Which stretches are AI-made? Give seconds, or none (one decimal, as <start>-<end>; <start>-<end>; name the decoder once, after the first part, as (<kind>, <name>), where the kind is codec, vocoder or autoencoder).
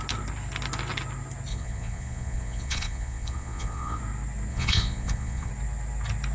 1.5-4.0 (vocoder, Vocos); 4.5-5.5